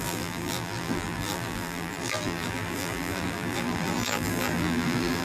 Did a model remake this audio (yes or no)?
yes